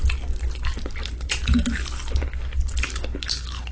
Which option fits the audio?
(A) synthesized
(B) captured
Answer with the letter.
B